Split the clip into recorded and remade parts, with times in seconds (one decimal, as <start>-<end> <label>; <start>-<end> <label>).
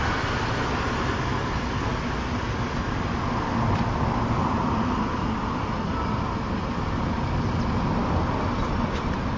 0.0-9.4 recorded